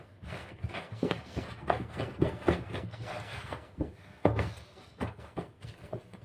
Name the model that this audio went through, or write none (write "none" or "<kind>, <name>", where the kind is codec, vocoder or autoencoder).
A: codec, SNAC